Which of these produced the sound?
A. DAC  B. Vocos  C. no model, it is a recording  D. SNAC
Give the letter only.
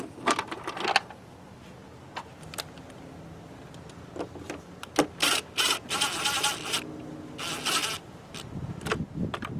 C